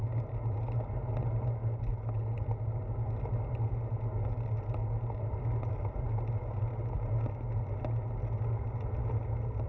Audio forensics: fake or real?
real